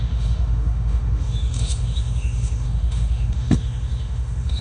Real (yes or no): no